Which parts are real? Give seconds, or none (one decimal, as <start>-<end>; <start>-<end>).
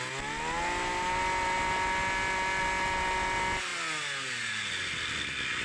0.0-5.6